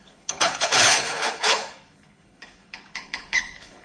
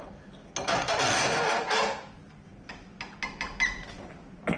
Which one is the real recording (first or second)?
second